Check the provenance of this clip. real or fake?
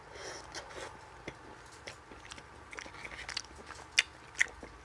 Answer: real